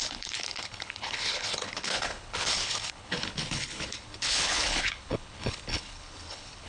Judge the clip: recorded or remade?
remade